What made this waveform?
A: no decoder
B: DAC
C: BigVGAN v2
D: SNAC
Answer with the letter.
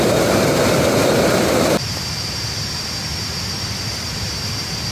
A